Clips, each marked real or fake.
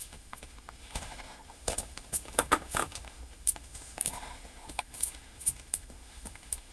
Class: fake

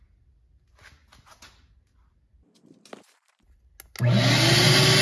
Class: real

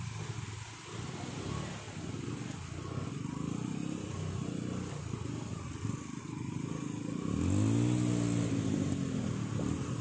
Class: real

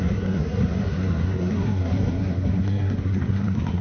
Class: fake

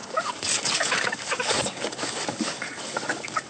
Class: fake